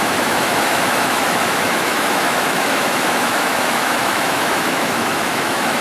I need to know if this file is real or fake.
fake